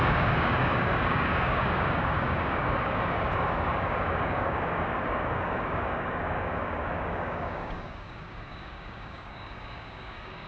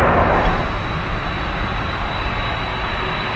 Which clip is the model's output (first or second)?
first